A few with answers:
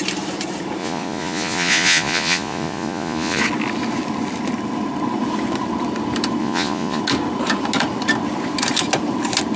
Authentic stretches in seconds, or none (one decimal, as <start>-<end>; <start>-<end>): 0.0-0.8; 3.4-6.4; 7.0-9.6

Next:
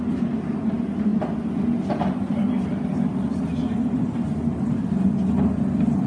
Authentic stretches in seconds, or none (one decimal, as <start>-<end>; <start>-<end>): 0.0-6.1

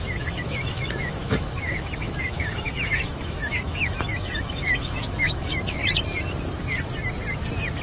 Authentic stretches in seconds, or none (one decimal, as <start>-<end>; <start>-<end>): 5.8-7.8

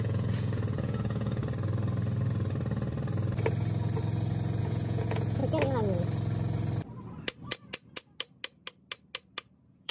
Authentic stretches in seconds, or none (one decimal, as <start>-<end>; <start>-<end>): 1.4-4.6; 5.4-9.5

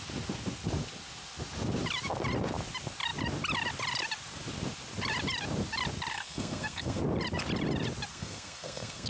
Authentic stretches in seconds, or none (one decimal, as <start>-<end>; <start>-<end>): 0.0-6.1; 7.0-8.1

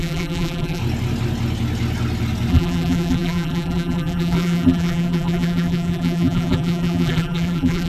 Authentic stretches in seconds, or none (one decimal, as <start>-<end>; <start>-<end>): 0.8-2.5

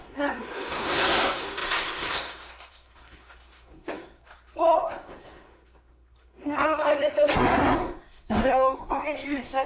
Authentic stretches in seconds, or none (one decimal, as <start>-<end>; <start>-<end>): none

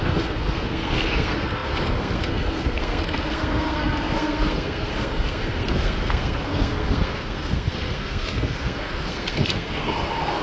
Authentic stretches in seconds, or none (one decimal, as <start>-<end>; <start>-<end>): none